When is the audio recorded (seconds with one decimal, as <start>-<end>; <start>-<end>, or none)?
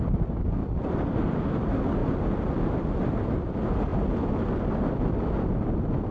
0.0-0.6; 1.4-6.1